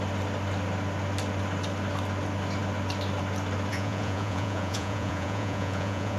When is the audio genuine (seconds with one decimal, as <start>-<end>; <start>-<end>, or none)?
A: 0.0-3.7